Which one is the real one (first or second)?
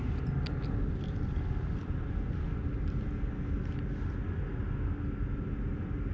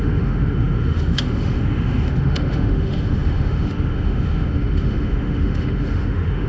first